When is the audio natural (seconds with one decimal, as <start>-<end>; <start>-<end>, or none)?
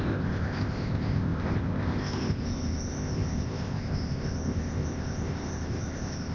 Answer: none